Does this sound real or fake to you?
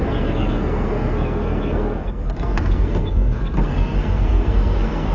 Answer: fake